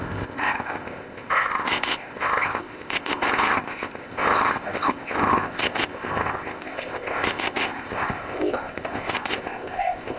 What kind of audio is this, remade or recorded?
remade